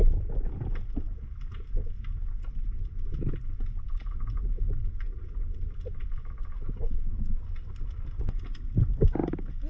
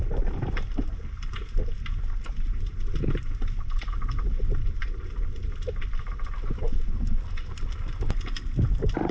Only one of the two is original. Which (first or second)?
first